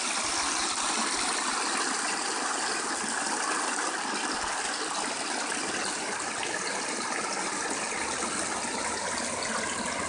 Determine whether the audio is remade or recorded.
recorded